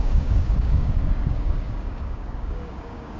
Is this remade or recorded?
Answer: remade